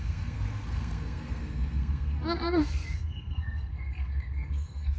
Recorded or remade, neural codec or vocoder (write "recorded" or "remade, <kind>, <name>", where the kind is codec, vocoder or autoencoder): remade, codec, SNAC